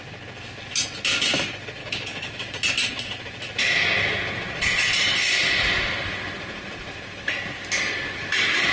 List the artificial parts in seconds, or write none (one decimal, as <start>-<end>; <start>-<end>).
1.8-2.3